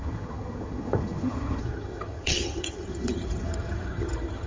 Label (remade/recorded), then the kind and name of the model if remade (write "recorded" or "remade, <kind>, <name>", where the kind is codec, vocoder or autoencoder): remade, vocoder, HiFi-GAN